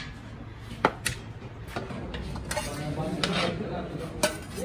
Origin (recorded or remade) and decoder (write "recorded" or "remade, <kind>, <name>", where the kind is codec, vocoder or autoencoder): recorded